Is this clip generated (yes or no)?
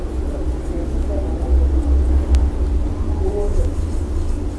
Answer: no